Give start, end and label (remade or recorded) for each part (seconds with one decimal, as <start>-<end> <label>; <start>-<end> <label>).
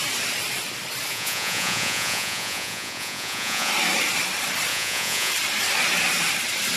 0.0-1.1 recorded; 1.1-3.7 remade; 3.7-4.7 recorded; 4.7-5.3 remade; 5.3-6.8 recorded